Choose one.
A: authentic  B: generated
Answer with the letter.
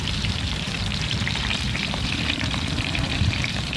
B